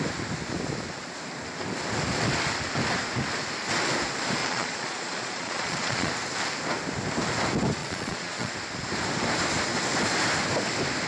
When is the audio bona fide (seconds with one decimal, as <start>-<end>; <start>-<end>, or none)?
0.0-4.4; 6.1-7.8; 8.5-11.1